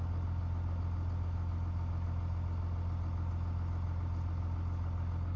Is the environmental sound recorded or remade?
recorded